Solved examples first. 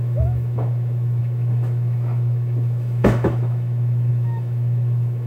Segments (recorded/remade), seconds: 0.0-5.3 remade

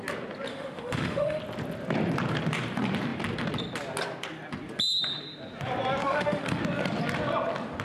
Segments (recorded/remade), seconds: 0.0-0.5 recorded; 0.5-1.4 remade; 1.4-6.0 recorded; 6.0-6.6 remade; 6.6-7.8 recorded

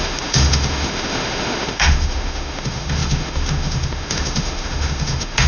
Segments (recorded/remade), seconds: 0.0-5.5 remade

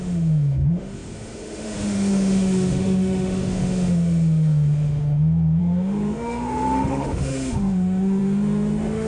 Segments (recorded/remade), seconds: 0.0-9.1 remade

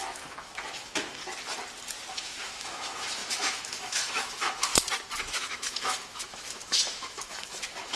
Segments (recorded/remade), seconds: 0.0-1.2 remade; 1.2-2.1 recorded; 2.1-4.7 remade; 4.7-5.2 recorded; 5.2-8.0 remade

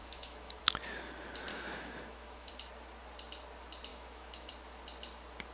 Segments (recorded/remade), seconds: 0.0-0.6 remade; 0.6-1.5 recorded; 1.5-2.5 remade; 2.5-3.9 recorded; 3.9-4.5 remade; 4.5-5.5 recorded